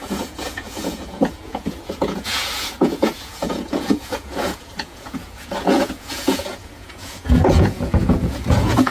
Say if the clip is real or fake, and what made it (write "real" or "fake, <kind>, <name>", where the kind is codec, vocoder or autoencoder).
fake, vocoder, Vocos